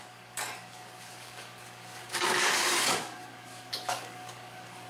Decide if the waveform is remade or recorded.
remade